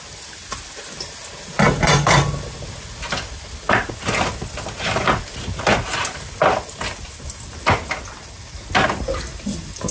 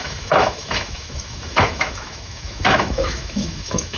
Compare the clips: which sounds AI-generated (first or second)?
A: second